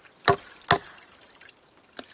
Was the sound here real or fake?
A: real